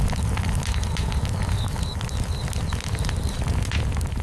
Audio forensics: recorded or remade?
recorded